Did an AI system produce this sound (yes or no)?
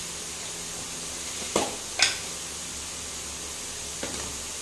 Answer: no